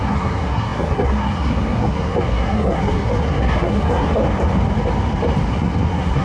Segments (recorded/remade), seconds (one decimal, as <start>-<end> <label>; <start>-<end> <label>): 0.0-4.2 remade; 4.2-5.5 recorded; 5.5-6.2 remade